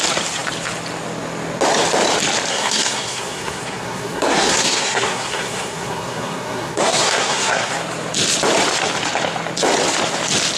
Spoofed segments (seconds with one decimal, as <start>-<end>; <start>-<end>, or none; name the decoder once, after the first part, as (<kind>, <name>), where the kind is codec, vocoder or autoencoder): 2.5-7.7 (codec, SNAC)